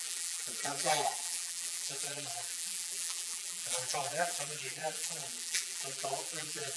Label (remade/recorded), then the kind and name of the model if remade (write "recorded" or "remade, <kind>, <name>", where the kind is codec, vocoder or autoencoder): remade, vocoder, BigVGAN v2